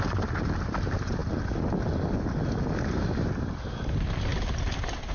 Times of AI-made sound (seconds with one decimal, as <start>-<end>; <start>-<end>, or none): none